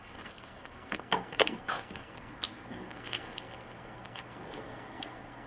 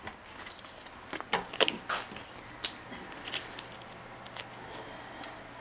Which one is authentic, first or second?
second